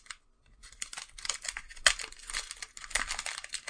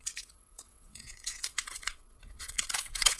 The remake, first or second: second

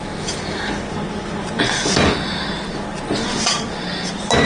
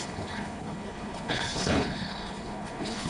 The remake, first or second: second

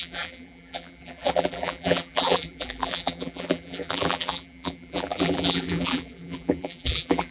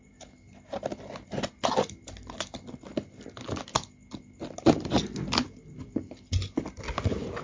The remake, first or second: first